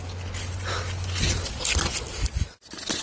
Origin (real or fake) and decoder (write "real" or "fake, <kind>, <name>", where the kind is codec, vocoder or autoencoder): real